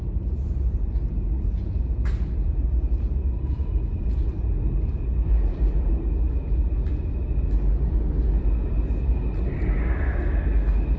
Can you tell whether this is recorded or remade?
recorded